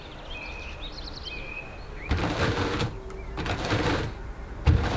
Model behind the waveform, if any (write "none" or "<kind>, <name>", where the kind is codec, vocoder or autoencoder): none